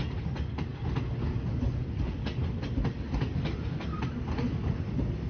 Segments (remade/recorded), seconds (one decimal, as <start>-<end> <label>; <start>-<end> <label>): 0.0-1.8 recorded; 1.8-3.8 remade; 3.8-5.3 recorded